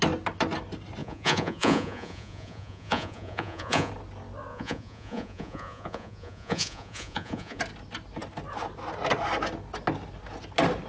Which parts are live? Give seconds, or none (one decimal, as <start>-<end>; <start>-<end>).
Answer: 0.0-1.0; 3.9-4.5; 7.6-10.9